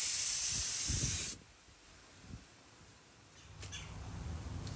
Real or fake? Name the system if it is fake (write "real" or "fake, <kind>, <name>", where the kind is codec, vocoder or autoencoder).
fake, vocoder, BigVGAN v2